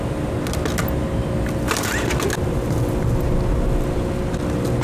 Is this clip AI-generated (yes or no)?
no